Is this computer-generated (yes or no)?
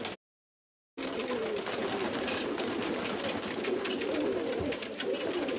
no